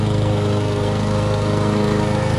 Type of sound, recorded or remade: remade